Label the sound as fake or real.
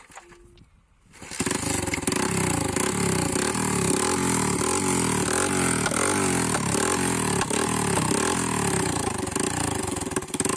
real